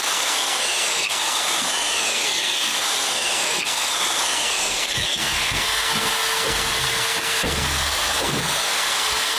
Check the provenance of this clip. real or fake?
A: fake